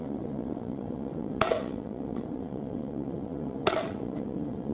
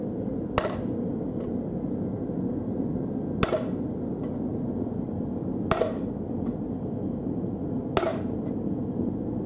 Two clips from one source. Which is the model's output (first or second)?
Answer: first